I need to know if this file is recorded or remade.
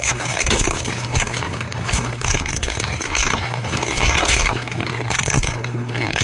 remade